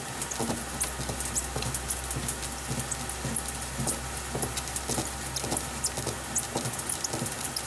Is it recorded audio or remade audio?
recorded